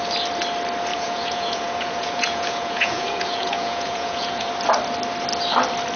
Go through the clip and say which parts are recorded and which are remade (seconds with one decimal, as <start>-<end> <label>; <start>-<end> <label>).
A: 0.0-0.9 recorded; 0.9-4.5 remade; 4.5-6.0 recorded